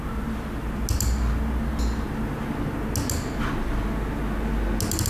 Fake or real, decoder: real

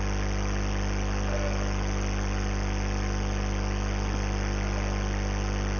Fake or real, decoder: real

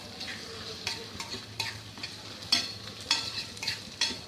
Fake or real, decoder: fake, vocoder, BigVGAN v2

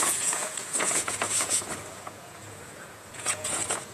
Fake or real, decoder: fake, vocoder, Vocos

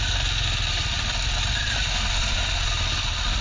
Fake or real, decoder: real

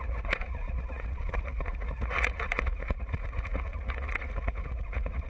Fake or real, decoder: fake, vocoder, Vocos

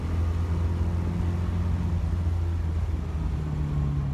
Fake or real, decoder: real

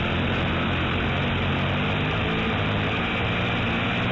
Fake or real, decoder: real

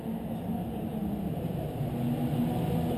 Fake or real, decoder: real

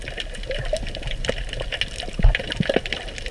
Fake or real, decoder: real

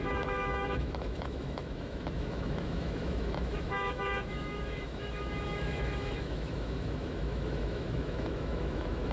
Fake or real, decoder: fake, autoencoder, DAC-VAE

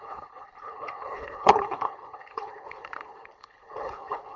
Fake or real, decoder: fake, codec, HILCodec